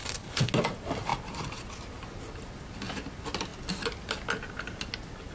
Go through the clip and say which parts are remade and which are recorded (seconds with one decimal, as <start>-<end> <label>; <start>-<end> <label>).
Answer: 0.0-0.5 remade; 0.5-5.3 recorded